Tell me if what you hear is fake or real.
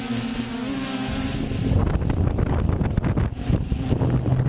real